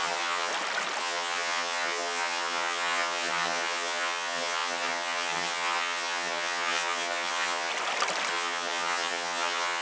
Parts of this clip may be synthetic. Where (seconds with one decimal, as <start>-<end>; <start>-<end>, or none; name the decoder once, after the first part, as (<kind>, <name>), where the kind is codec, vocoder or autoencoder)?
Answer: 0.0-0.5 (vocoder, HiFi-GAN); 1.0-7.7; 8.3-9.8